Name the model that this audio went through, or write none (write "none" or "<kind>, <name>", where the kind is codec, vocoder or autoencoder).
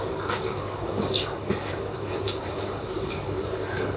codec, DAC